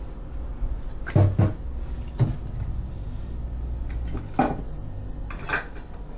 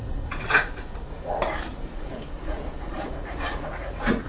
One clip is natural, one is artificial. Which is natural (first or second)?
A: first